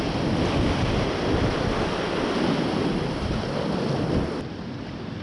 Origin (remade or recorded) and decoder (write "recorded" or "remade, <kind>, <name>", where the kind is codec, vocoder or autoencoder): recorded